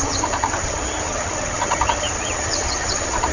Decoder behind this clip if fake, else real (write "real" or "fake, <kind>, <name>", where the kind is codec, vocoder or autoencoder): fake, vocoder, HiFi-GAN